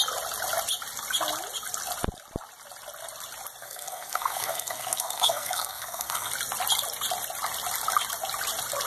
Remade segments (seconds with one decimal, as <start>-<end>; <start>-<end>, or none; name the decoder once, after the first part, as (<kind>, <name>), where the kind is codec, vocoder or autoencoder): 3.6-6.3 (codec, SNAC)